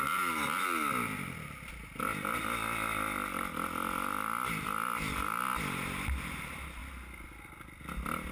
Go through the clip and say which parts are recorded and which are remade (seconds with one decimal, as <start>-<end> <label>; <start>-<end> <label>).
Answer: 0.0-2.1 recorded; 2.1-5.4 remade; 5.4-8.3 recorded